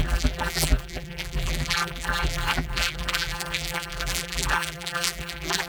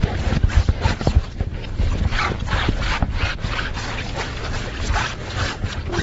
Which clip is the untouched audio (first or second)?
second